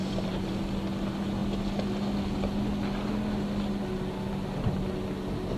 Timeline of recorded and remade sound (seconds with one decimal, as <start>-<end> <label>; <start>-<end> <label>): 0.0-0.7 remade; 0.7-5.6 recorded

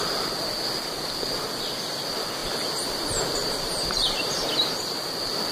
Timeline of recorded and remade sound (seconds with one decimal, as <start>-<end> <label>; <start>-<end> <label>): 0.0-2.4 recorded; 2.4-4.7 remade; 4.7-5.5 recorded

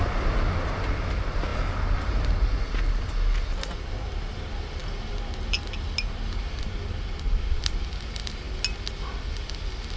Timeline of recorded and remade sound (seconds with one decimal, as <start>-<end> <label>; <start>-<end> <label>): 0.0-10.0 recorded

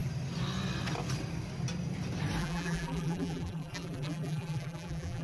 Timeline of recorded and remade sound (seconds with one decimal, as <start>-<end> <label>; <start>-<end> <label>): 0.0-2.4 recorded; 2.4-5.2 remade

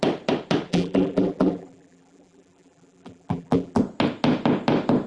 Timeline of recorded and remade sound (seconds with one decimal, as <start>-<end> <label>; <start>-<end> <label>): 0.0-0.7 recorded; 0.7-3.8 remade; 3.8-5.1 recorded

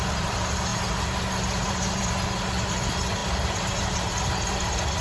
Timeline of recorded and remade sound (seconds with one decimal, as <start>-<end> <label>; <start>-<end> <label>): 0.0-0.7 remade; 0.7-1.7 recorded; 1.7-5.0 remade